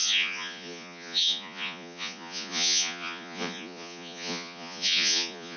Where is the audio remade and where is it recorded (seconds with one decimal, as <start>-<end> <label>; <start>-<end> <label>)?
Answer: 0.0-5.6 remade